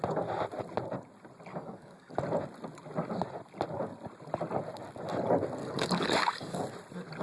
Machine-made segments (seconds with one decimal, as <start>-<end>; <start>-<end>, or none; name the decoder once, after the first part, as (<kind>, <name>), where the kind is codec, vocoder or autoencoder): 1.5-2.1 (codec, DAC); 5.6-6.6